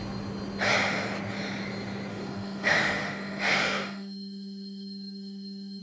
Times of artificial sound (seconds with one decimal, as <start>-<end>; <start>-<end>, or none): 2.1-5.8